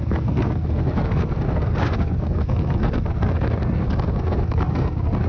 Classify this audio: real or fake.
fake